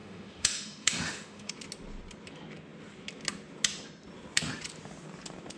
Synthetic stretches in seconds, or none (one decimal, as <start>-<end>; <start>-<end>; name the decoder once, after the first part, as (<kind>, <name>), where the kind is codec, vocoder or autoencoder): 0.0-1.5 (autoencoder, DAC-VAE)